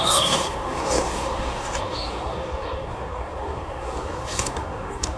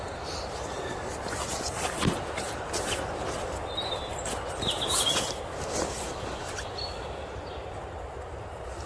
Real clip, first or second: second